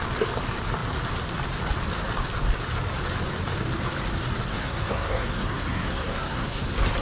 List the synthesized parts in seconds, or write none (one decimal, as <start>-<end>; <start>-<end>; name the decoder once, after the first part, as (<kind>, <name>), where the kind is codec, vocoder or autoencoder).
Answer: 4.5-6.6 (codec, SNAC)